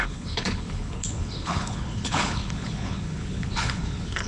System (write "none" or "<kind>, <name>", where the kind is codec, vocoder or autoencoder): codec, HILCodec